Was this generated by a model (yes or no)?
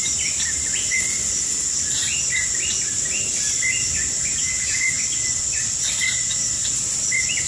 no